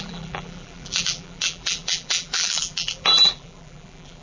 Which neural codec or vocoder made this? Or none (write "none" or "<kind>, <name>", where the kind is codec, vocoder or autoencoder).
vocoder, BigVGAN v2